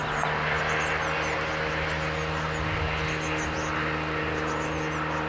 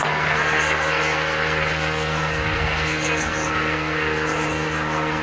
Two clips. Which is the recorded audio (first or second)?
first